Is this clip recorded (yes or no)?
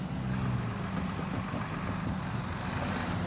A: yes